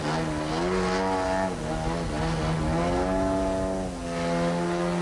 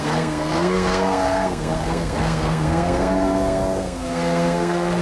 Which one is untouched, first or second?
first